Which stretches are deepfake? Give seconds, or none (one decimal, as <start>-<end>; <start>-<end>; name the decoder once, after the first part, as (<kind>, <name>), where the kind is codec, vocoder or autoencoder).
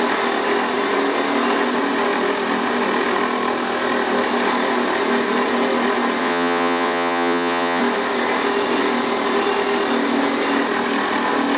6.2-7.8 (vocoder, WaveNeXt)